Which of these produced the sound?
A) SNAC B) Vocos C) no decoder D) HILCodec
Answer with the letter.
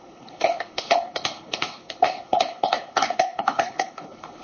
D